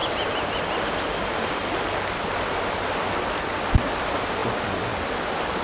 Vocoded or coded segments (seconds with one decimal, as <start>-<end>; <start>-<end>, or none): none